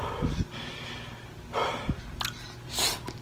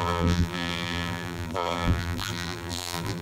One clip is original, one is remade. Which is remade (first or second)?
second